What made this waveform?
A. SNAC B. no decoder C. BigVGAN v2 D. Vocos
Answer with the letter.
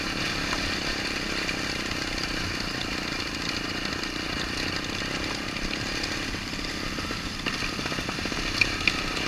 C